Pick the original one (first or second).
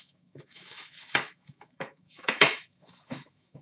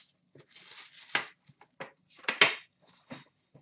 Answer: second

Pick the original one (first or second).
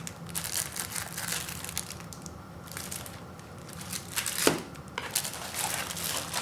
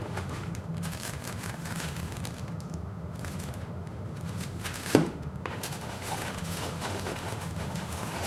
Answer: first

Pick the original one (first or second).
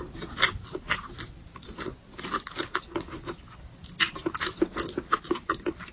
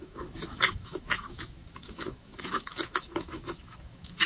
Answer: first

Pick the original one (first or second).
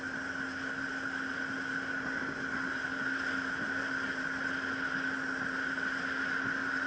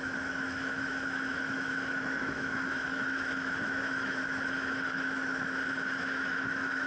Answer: first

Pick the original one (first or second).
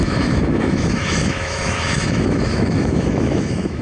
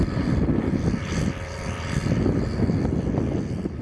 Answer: second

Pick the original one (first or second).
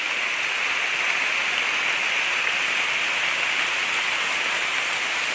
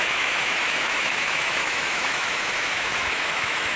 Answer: first